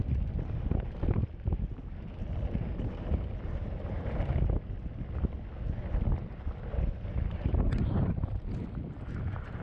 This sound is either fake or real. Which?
real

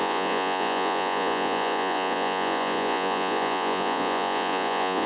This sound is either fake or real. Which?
fake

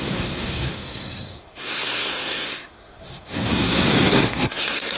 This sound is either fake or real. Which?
fake